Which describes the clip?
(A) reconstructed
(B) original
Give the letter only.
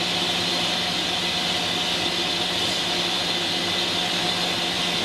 B